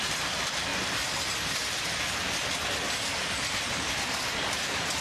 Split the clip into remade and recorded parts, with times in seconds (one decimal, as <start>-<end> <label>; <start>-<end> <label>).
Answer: 0.0-5.0 recorded